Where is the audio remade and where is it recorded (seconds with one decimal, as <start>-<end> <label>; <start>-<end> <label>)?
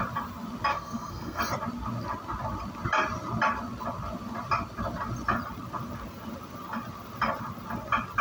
0.0-0.7 recorded; 0.7-1.4 remade; 1.4-8.2 recorded